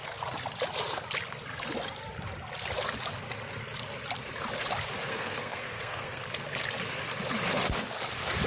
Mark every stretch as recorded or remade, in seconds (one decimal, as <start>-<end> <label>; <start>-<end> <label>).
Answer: 0.0-5.1 recorded; 5.1-6.2 remade; 6.2-8.5 recorded